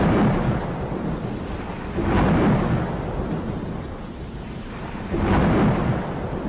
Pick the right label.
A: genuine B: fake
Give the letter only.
A